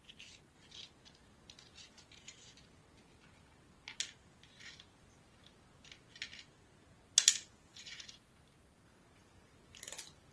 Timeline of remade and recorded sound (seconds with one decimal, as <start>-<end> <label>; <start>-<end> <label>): 0.0-7.7 recorded; 7.7-8.3 remade; 8.3-10.3 recorded